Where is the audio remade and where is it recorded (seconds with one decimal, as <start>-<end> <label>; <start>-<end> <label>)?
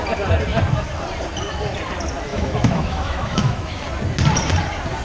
0.0-2.3 recorded; 2.3-3.8 remade; 3.8-5.0 recorded